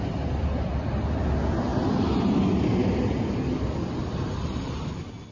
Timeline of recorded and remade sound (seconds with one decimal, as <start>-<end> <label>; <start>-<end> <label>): 0.0-5.3 recorded